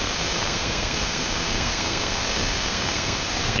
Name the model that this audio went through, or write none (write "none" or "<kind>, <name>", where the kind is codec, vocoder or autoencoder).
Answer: codec, SNAC